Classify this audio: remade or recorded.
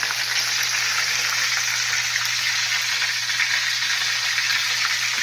recorded